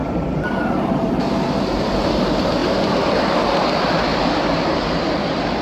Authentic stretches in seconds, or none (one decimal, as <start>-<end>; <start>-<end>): 1.1-2.6; 3.2-5.6